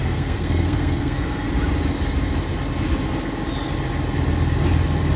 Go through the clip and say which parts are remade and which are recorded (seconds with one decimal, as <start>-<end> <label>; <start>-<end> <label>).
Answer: 0.0-1.5 remade; 1.5-5.2 recorded